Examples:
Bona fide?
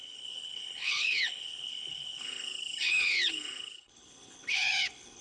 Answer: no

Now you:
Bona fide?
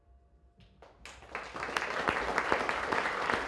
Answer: yes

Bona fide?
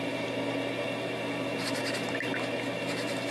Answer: yes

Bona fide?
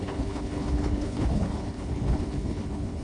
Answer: no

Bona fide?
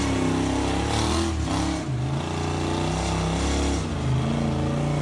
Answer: yes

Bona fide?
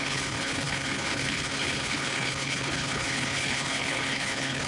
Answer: no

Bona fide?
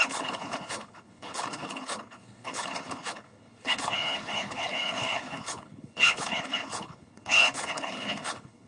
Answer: no